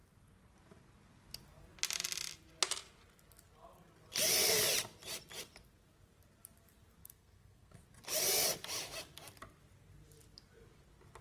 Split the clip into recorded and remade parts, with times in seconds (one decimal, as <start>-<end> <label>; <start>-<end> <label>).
0.0-7.0 recorded; 7.0-7.8 remade; 7.8-11.2 recorded